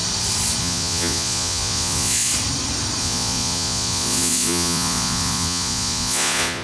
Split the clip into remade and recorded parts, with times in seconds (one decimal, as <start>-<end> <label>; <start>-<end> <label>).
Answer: 0.0-0.6 recorded; 0.6-2.3 remade; 2.3-3.0 recorded; 3.0-6.6 remade